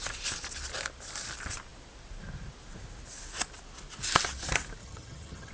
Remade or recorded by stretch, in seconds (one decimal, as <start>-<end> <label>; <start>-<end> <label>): 0.0-4.8 recorded; 4.8-5.5 remade